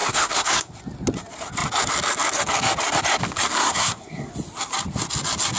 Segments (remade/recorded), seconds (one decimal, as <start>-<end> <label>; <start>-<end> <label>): 0.0-0.7 remade; 0.7-3.6 recorded; 3.6-4.3 remade; 4.3-5.6 recorded